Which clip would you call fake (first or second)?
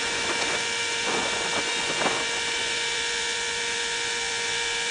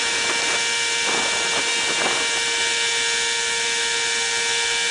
first